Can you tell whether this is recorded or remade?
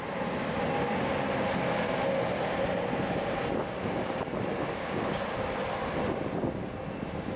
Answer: recorded